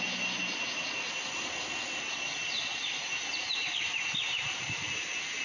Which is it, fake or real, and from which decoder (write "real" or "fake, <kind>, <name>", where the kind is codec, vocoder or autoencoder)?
real